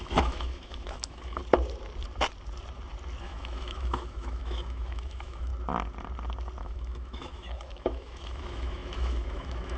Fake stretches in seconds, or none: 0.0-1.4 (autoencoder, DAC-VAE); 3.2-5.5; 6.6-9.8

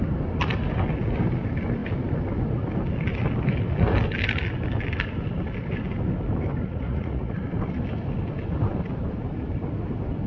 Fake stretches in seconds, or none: 6.6-7.4 (vocoder, Vocos)

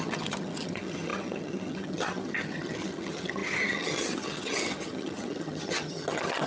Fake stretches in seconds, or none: 0.0-6.5 (vocoder, HiFi-GAN)

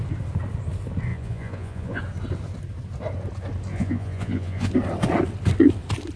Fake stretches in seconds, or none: 1.1-2.0 (vocoder, Vocos); 3.7-4.7

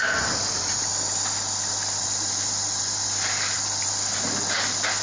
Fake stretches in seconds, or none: none

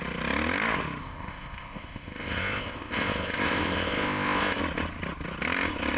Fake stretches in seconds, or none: 1.0-4.6 (codec, ZipCodec)